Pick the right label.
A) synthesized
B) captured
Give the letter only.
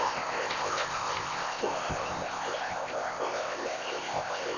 A